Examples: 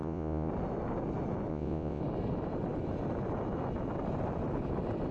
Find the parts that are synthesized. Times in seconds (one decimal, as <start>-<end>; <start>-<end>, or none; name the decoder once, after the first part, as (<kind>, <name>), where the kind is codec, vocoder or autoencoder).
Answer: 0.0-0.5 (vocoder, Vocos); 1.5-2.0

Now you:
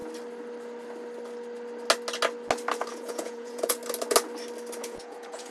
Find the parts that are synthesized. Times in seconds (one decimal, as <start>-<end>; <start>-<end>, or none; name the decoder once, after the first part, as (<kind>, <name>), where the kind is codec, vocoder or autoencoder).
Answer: 2.9-3.8 (vocoder, Vocos); 4.8-5.5

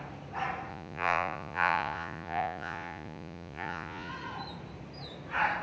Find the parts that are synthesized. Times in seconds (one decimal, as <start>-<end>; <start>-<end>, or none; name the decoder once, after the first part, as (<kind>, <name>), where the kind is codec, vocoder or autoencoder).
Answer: 0.7-4.1 (vocoder, Vocos)

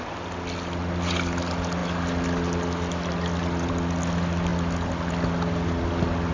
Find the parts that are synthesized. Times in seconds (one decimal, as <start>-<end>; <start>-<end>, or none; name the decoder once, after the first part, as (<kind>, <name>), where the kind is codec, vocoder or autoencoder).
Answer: none

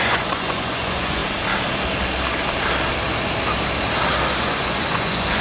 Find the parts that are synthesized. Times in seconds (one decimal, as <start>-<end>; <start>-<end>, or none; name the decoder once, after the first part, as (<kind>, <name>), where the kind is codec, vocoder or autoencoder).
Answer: 0.0-1.2 (vocoder, Vocos); 4.4-5.4